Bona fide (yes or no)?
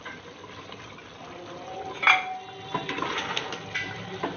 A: yes